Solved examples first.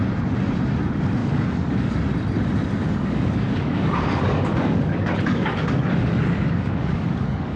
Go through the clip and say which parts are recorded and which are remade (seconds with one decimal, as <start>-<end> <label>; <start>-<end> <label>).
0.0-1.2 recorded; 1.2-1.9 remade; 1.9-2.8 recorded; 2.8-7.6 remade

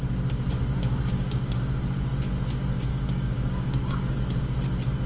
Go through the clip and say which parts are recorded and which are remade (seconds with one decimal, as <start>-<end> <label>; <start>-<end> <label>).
0.0-0.8 recorded; 0.8-1.6 remade; 1.6-2.9 recorded; 2.9-4.2 remade; 4.2-5.1 recorded

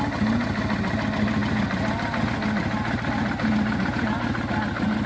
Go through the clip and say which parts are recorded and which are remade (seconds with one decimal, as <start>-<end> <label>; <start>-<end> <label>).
0.0-5.1 recorded

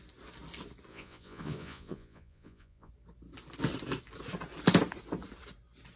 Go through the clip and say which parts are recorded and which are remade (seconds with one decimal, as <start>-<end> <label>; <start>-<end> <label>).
0.0-0.9 recorded; 0.9-2.9 remade; 2.9-6.0 recorded